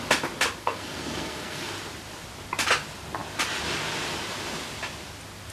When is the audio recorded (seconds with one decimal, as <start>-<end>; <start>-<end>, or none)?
0.0-0.6; 1.7-5.5